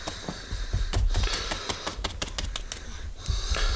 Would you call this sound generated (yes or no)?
no